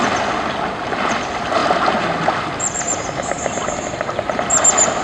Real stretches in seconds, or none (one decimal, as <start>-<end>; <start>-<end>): 0.0-5.0